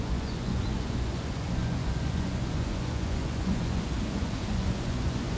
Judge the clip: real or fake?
fake